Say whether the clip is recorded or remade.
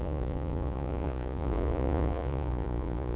remade